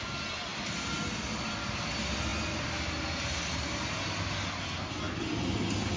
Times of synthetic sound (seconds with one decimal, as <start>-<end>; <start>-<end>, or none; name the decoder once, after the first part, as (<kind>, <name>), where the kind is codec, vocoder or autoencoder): none